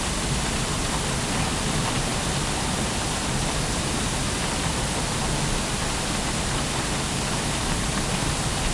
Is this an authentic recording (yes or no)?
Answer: yes